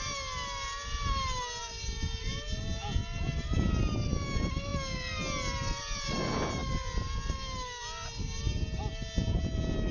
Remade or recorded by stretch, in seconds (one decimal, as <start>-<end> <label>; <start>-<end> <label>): 0.0-9.9 recorded